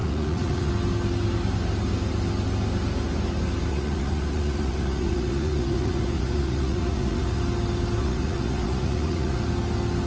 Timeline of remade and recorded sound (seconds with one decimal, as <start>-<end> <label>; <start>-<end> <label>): 0.0-0.7 remade; 0.7-3.7 recorded; 3.7-7.4 remade; 7.4-8.0 recorded; 8.0-9.4 remade; 9.4-10.1 recorded

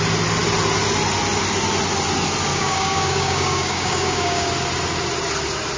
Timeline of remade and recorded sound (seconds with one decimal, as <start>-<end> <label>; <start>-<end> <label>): 0.0-2.5 recorded; 2.5-4.5 remade; 4.5-5.8 recorded

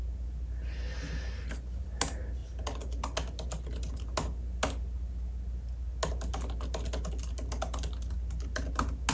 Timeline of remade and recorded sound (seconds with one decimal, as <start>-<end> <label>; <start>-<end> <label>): 0.0-9.1 recorded

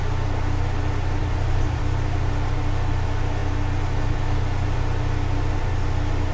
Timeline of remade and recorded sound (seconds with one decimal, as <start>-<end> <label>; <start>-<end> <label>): 0.0-1.2 recorded; 1.2-1.8 remade; 1.8-6.3 recorded

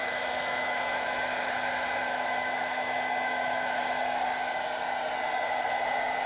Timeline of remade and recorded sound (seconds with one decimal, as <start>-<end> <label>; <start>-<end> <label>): 0.0-3.8 remade; 3.8-6.3 recorded

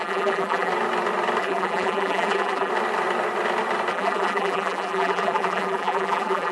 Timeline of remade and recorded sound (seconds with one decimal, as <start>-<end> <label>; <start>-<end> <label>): 0.0-0.7 remade; 0.7-1.4 recorded; 1.4-2.7 remade; 2.7-3.9 recorded; 3.9-6.5 remade